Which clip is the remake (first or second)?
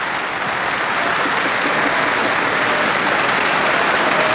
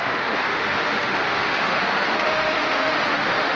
second